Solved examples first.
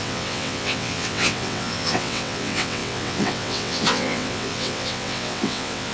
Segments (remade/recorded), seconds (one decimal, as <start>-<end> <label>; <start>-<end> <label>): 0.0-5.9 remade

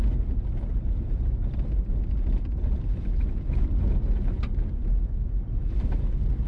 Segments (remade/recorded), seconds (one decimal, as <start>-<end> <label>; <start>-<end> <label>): 0.0-6.5 recorded

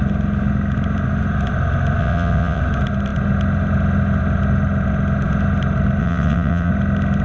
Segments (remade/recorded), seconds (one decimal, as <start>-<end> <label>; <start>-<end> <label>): 0.0-2.0 recorded; 2.0-2.6 remade; 2.6-6.0 recorded; 6.0-6.7 remade; 6.7-7.2 recorded

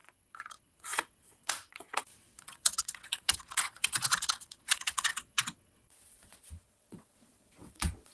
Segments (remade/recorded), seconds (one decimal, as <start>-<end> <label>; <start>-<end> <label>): 0.0-8.1 remade

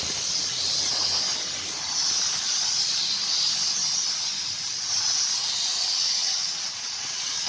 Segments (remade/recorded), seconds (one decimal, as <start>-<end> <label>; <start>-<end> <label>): 0.0-6.2 recorded; 6.2-7.5 remade

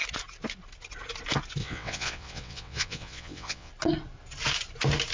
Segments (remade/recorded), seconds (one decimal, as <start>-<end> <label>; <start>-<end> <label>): 0.0-1.6 recorded; 1.6-3.7 remade; 3.7-5.1 recorded